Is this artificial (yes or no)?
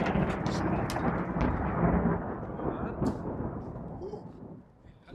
no